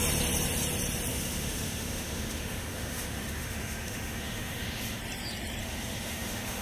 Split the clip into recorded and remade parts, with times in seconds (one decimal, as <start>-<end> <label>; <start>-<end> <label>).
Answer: 0.0-1.1 recorded; 1.1-5.0 remade; 5.0-5.6 recorded; 5.6-6.6 remade